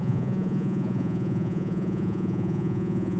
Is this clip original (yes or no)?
no